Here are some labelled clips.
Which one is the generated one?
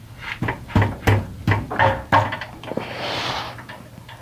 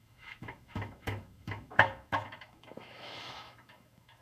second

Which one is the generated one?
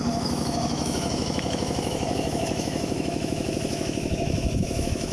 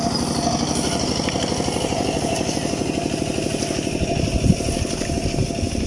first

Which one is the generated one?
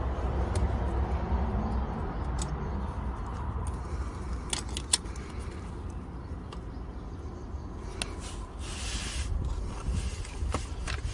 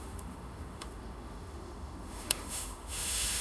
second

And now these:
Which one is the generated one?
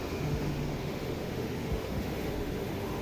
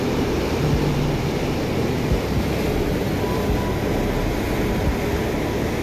first